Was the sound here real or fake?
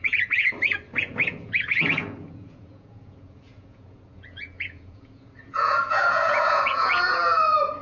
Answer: fake